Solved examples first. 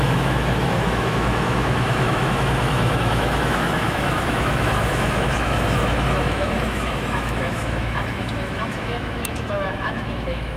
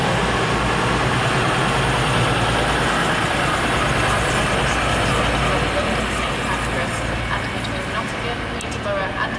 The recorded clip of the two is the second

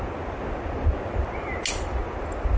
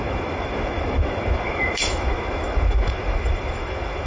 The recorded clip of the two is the first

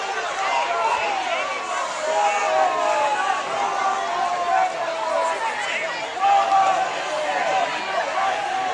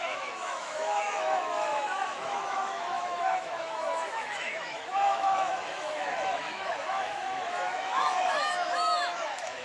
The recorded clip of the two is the first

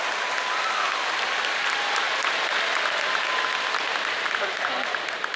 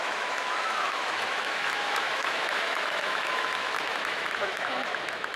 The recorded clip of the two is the first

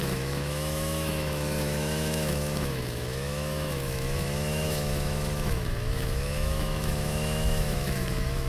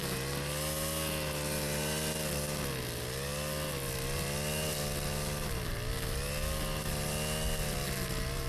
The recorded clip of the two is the second